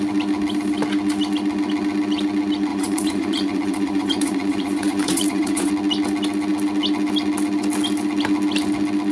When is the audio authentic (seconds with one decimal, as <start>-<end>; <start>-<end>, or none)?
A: 0.0-2.7; 5.7-9.1